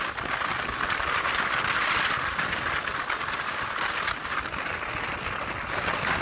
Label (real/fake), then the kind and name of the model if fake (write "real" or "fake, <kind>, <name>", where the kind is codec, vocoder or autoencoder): real